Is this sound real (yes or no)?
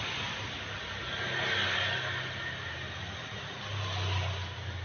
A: yes